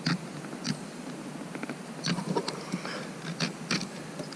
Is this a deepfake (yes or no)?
no